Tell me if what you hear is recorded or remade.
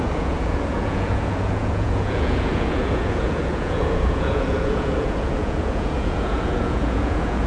remade